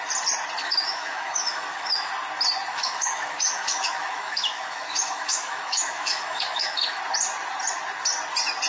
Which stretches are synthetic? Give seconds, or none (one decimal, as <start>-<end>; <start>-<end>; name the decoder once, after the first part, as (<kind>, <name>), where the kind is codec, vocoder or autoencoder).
0.6-2.1 (autoencoder, DAC-VAE); 2.7-7.0